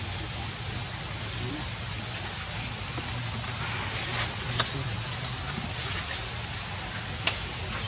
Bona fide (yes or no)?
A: yes